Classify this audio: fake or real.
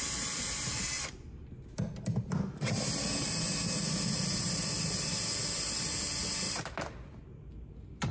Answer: real